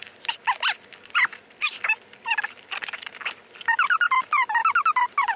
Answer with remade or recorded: recorded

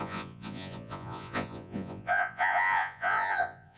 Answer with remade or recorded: remade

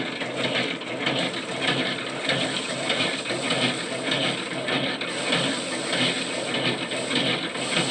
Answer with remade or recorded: recorded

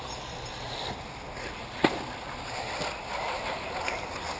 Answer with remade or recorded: recorded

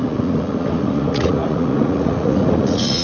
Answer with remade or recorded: remade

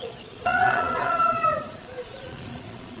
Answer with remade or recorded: remade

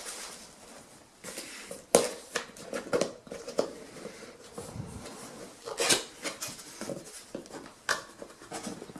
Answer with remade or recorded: recorded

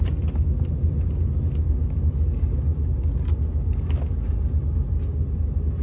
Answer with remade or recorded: recorded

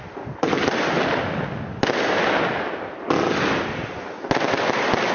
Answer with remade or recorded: recorded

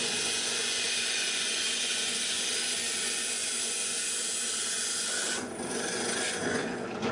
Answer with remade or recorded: remade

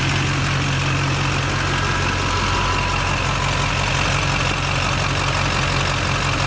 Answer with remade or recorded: recorded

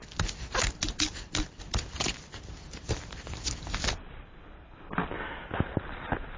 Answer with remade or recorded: recorded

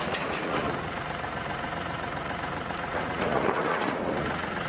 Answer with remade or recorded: remade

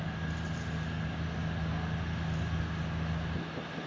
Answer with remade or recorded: recorded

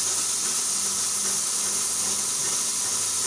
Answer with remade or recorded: recorded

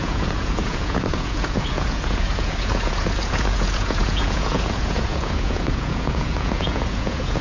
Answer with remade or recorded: remade